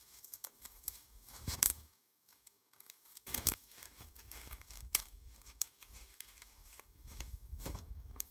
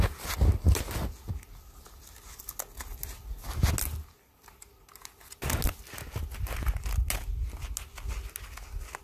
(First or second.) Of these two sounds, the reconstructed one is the first